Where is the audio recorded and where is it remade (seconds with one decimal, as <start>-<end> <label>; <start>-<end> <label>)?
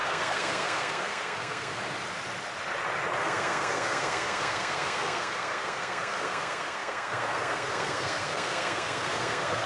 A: 0.0-1.8 remade; 1.8-3.2 recorded; 3.2-9.7 remade